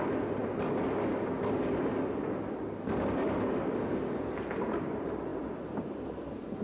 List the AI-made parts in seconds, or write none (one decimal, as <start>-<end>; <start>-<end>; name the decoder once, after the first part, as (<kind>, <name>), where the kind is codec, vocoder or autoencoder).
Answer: none